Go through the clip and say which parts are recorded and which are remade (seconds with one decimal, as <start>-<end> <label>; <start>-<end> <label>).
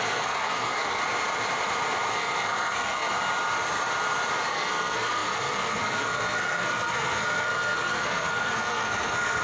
0.0-1.0 remade; 1.0-2.1 recorded; 2.1-3.1 remade; 3.1-4.5 recorded; 4.5-9.4 remade